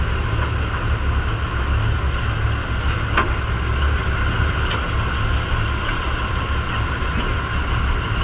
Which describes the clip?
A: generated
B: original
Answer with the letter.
B